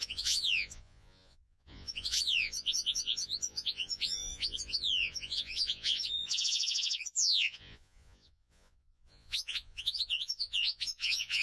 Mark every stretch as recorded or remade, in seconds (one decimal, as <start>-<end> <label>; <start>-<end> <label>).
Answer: 0.0-11.4 remade